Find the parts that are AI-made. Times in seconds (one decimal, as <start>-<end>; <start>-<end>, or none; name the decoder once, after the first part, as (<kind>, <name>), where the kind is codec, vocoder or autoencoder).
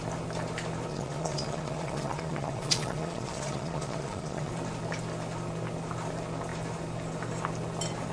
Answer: 0.9-4.5 (vocoder, Vocos)